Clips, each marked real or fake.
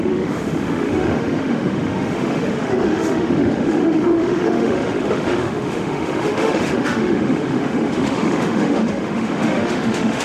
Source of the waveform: fake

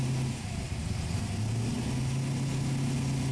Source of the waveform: real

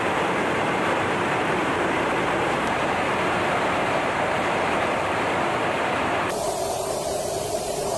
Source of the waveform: fake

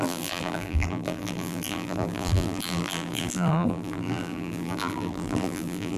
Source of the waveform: fake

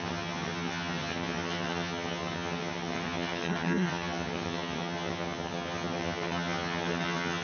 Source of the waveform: fake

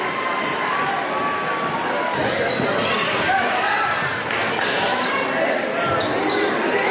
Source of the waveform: real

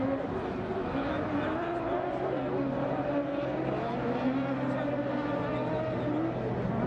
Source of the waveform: real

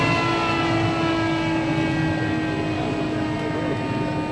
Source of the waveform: real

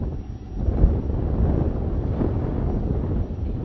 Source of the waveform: real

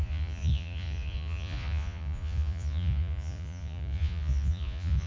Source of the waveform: fake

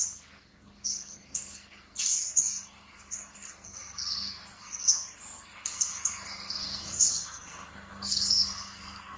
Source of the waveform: fake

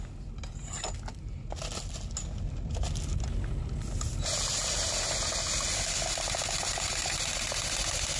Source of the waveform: real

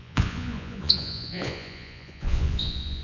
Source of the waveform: fake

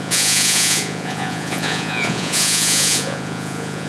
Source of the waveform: fake